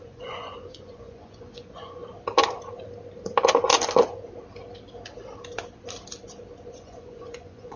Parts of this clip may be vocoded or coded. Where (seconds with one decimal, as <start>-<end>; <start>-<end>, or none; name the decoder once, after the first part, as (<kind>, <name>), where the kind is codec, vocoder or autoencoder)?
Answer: 0.0-2.0 (vocoder, Vocos); 6.7-7.8